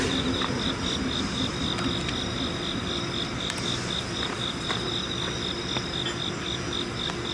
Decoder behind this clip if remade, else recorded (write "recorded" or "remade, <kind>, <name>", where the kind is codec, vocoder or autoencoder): recorded